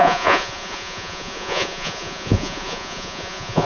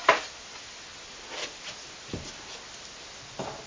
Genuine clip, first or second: second